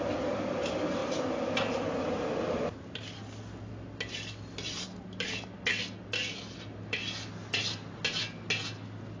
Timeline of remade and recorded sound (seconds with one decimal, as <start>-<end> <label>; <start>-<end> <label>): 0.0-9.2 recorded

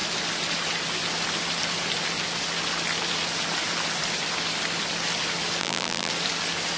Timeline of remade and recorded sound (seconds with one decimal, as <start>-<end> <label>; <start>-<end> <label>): 0.0-5.6 recorded; 5.6-6.1 remade; 6.1-6.8 recorded

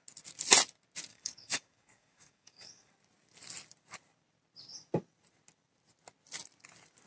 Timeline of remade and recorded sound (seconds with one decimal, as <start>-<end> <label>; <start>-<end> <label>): 0.0-1.1 recorded; 1.1-2.9 remade; 2.9-7.1 recorded

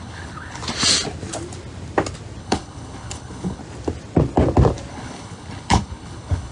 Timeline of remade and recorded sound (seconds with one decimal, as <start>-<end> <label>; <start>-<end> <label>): 0.0-0.6 remade; 0.6-2.4 recorded; 2.4-3.6 remade; 3.6-4.9 recorded; 4.9-6.5 remade

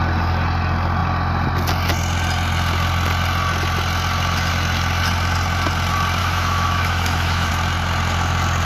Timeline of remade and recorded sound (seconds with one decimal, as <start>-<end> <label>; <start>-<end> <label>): 0.0-6.2 recorded; 6.2-7.5 remade; 7.5-8.7 recorded

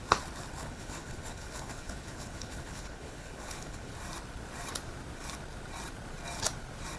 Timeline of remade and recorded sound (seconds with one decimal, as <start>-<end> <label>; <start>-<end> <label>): 0.0-0.6 recorded; 0.6-3.9 remade; 3.9-7.0 recorded

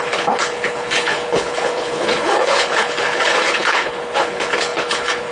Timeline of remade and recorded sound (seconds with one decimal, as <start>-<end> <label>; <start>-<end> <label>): 0.0-5.3 remade